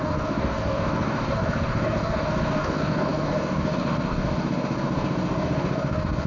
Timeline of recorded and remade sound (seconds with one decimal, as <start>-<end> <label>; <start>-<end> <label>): 0.0-6.3 remade